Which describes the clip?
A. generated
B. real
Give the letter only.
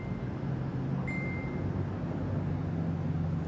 B